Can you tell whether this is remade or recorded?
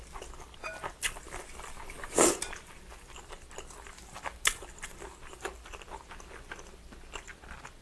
recorded